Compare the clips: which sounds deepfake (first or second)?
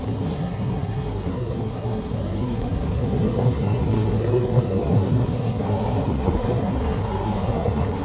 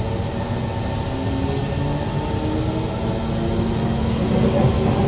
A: first